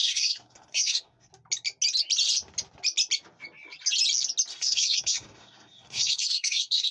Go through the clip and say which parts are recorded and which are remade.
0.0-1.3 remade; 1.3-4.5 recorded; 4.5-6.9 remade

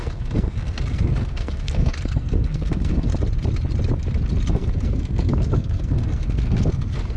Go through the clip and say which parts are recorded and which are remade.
0.0-3.1 remade; 3.1-4.5 recorded; 4.5-7.2 remade